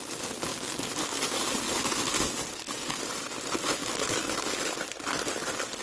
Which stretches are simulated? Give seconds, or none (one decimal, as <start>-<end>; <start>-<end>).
0.5-1.7; 3.8-4.9